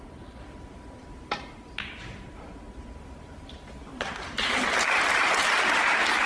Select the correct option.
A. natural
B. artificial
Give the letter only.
B